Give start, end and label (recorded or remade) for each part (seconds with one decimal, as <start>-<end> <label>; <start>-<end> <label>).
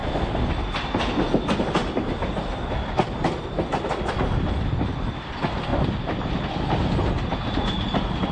0.0-8.3 recorded